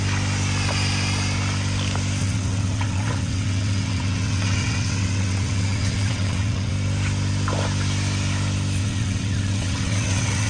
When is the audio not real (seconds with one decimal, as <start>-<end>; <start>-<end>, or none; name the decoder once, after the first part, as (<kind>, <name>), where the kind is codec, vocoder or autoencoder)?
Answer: 2.2-6.7 (vocoder, WaveNeXt); 8.8-10.5